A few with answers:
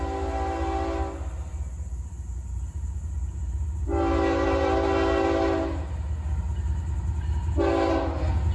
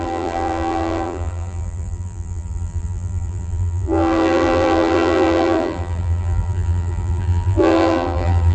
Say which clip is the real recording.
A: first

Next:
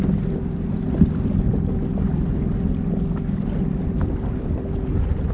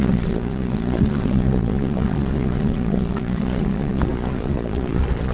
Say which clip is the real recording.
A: first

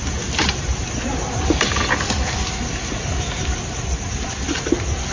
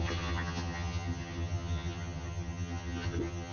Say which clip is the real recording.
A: first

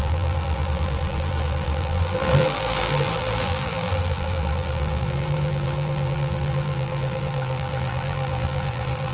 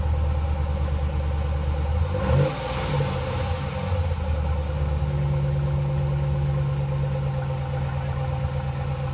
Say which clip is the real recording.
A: second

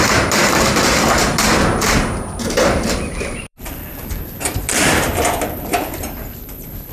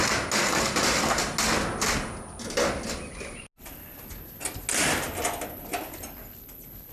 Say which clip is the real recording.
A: second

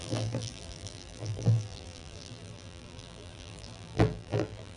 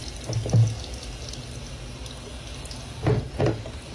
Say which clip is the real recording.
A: second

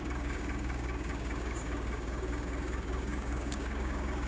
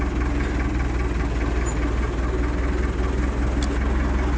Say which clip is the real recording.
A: second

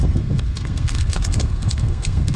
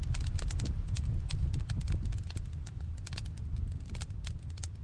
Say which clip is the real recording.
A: second